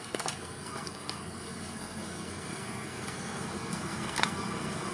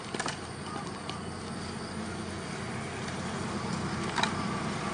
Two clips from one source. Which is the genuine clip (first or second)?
second